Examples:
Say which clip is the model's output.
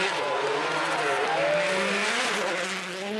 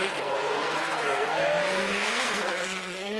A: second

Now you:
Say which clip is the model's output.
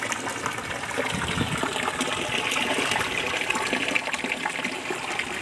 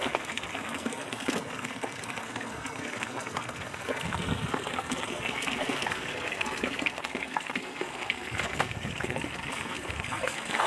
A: second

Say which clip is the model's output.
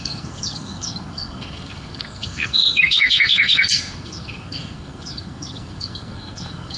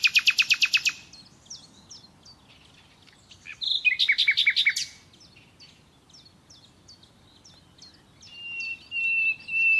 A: first